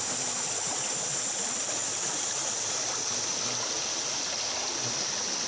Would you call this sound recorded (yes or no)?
yes